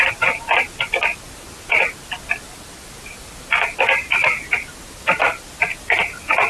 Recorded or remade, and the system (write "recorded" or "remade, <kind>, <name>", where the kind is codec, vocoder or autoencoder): recorded